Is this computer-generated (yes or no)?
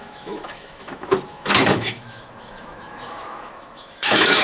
yes